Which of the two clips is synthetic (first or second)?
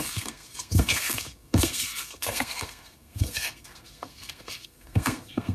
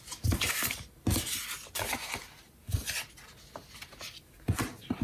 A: first